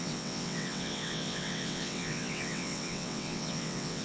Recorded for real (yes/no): no